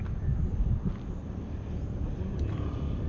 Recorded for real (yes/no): yes